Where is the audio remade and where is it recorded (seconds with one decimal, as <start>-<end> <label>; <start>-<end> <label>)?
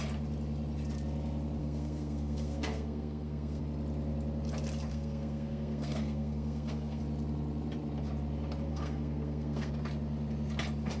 0.0-1.6 recorded; 1.6-3.6 remade; 3.6-4.9 recorded; 4.9-7.0 remade; 7.0-8.7 recorded; 8.7-9.7 remade; 9.7-11.0 recorded